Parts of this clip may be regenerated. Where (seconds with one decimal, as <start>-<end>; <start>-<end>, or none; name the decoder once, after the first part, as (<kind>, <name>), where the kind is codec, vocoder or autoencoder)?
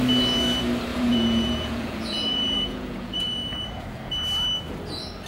0.9-4.1 (vocoder, Vocos)